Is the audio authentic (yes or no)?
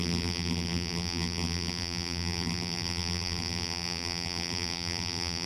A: no